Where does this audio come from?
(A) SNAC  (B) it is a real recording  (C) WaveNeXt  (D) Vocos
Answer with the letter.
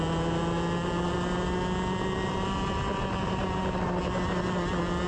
B